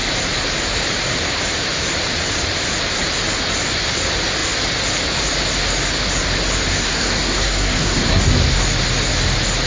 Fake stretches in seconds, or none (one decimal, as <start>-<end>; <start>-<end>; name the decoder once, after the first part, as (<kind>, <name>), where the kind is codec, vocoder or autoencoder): 6.7-8.2 (codec, SNAC)